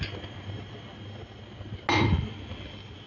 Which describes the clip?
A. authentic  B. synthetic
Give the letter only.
A